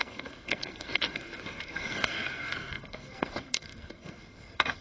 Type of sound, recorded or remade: remade